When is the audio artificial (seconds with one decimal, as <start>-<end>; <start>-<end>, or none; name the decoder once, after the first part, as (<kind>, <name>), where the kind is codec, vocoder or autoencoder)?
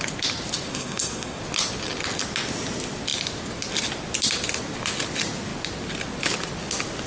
0.7-1.4 (codec, SNAC)